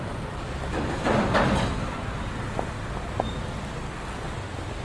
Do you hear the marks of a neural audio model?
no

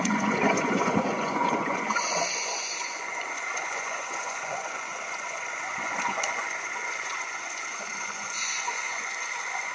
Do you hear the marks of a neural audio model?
yes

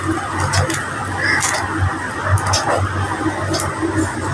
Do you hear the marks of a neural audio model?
no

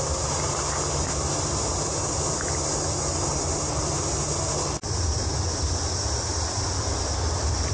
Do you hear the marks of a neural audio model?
no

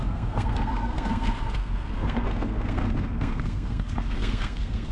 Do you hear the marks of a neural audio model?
yes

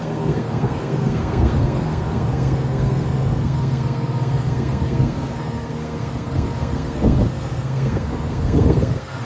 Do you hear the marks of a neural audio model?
yes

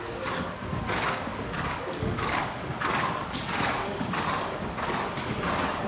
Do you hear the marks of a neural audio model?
yes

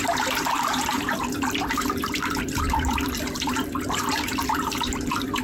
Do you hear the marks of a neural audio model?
yes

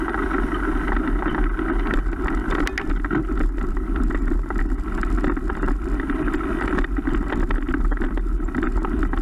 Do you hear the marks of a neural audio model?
no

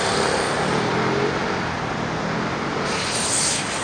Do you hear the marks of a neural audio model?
no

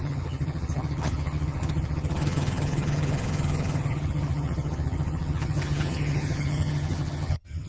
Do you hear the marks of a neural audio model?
yes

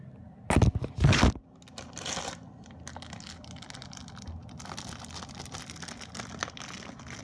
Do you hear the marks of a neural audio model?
no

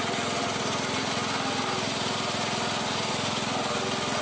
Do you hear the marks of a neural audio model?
no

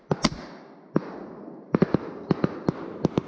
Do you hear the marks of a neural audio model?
no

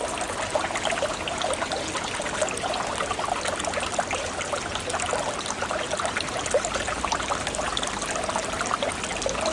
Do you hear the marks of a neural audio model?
no